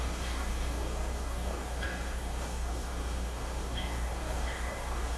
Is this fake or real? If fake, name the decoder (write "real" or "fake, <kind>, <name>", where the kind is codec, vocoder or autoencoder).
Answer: fake, codec, DAC